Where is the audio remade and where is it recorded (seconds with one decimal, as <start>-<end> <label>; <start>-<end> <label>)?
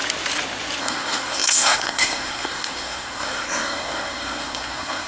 0.0-0.8 recorded; 0.8-5.1 remade